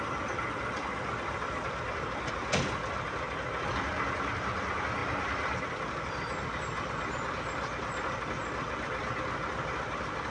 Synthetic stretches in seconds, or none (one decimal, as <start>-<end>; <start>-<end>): none